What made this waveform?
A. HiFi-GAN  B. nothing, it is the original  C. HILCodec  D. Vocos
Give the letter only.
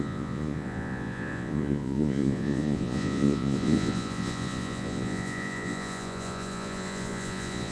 D